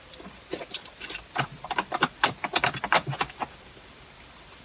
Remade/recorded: remade